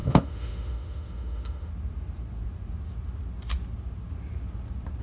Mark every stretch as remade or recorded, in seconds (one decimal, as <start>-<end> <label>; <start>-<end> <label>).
0.0-1.7 remade; 1.7-5.0 recorded